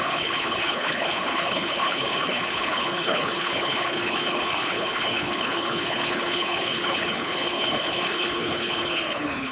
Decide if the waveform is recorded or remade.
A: remade